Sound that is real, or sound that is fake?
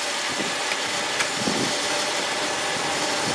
real